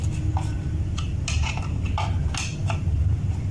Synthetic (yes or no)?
no